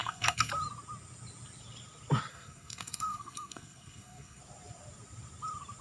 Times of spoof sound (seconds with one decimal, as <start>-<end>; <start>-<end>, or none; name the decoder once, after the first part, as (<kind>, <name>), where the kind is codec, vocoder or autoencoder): 0.0-0.5 (codec, SNAC); 2.3-4.4